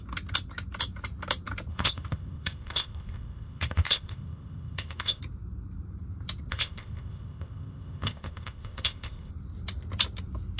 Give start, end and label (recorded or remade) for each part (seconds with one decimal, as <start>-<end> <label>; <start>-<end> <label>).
0.0-1.7 recorded; 1.7-5.2 remade; 5.2-6.5 recorded; 6.5-9.3 remade; 9.3-10.6 recorded